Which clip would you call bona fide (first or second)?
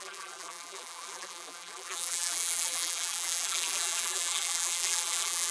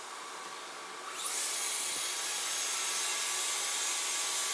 second